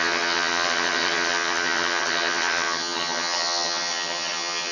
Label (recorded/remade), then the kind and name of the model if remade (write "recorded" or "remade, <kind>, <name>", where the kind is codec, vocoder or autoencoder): remade, vocoder, HiFi-GAN